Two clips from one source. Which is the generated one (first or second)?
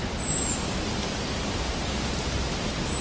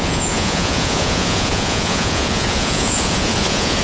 second